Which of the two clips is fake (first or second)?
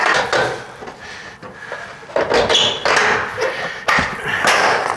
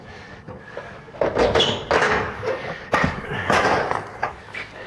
second